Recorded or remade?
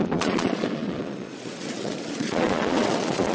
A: remade